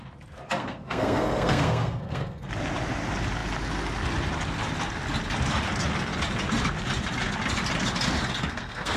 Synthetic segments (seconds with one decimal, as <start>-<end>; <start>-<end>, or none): 0.6-2.5; 8.4-9.0